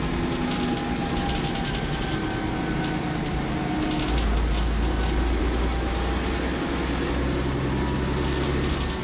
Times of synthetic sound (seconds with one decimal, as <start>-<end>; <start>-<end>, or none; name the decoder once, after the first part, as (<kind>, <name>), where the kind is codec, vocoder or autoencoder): none